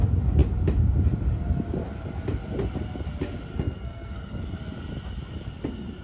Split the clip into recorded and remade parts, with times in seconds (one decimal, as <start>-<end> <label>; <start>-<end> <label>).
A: 0.0-3.5 recorded; 3.5-4.6 remade; 4.6-6.0 recorded